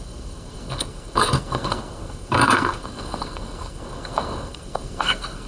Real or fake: fake